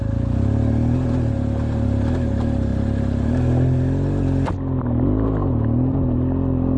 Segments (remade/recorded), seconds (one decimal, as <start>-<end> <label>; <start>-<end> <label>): 0.0-6.8 recorded